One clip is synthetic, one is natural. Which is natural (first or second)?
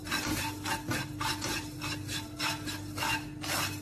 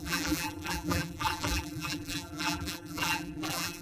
first